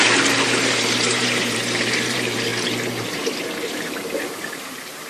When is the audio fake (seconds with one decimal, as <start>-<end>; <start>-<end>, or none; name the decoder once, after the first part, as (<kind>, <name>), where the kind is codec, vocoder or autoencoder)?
0.0-2.5 (vocoder, BigVGAN v2); 3.6-5.1